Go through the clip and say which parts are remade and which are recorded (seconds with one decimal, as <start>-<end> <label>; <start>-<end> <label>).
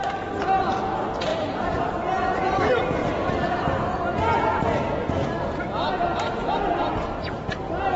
0.0-1.3 recorded; 1.3-2.6 remade; 2.6-8.0 recorded